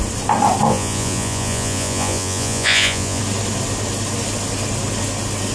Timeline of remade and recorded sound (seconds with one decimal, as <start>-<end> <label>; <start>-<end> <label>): 0.0-0.7 recorded; 0.7-3.2 remade; 3.2-5.5 recorded